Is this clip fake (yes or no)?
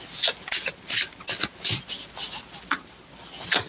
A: no